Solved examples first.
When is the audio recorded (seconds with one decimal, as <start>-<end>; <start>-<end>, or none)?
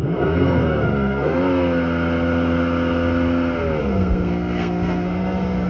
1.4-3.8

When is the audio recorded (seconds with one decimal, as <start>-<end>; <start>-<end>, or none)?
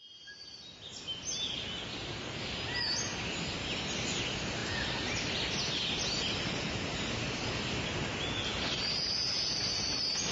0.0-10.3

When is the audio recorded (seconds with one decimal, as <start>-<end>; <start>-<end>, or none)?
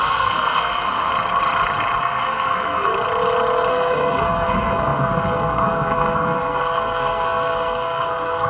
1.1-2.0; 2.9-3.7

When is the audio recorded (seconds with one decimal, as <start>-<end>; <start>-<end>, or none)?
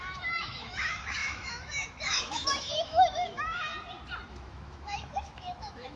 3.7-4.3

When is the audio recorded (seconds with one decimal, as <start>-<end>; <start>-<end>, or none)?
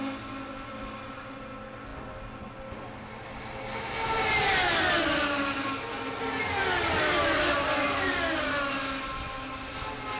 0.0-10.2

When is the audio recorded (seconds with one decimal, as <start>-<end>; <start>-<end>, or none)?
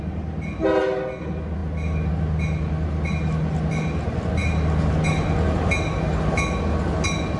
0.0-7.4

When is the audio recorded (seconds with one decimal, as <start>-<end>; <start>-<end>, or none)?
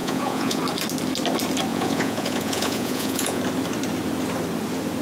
0.6-1.7; 3.4-5.0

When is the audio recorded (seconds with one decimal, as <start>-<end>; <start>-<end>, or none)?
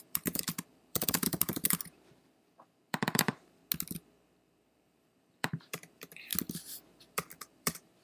3.6-4.4; 6.3-6.9